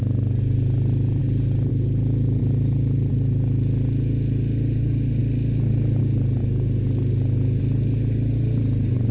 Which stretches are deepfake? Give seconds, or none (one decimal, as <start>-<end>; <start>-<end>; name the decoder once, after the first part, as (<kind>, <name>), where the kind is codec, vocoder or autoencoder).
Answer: 1.2-1.7 (vocoder, BigVGAN v2); 2.4-3.1